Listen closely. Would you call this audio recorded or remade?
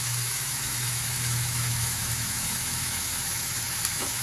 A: remade